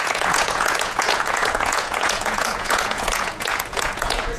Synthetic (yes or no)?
yes